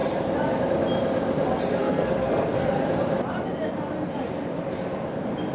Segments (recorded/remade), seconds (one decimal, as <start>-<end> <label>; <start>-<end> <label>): 0.0-1.8 recorded; 1.8-2.8 remade; 2.8-5.5 recorded